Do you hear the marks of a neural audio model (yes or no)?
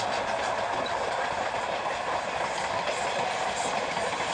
no